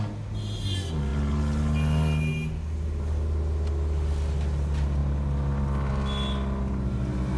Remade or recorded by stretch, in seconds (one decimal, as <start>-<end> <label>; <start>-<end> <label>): 0.0-7.4 recorded